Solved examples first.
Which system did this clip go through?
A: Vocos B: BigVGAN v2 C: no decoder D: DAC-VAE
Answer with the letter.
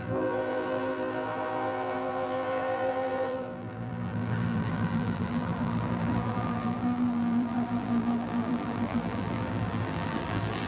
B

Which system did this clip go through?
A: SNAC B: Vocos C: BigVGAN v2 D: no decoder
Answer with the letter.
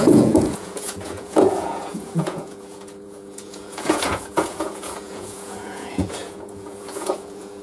B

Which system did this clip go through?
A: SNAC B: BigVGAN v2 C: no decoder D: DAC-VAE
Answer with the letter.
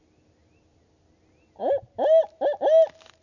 C